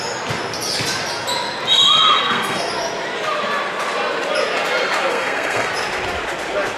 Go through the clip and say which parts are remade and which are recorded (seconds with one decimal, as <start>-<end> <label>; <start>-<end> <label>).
0.0-2.2 recorded; 2.2-2.7 remade; 2.7-5.1 recorded; 5.1-5.7 remade; 5.7-6.8 recorded